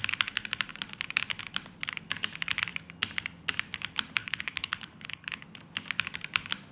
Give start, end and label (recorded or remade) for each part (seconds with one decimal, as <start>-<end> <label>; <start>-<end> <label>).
0.0-4.2 recorded; 4.2-5.4 remade; 5.4-6.7 recorded